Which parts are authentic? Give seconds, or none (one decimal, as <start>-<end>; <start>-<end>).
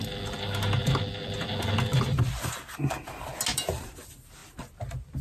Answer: 0.0-1.9; 2.5-3.5; 4.0-5.2